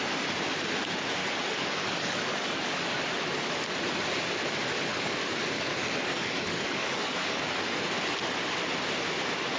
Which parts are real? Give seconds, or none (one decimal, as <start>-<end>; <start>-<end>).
0.0-1.2; 3.0-4.9; 7.4-9.6